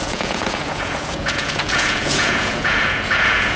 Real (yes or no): no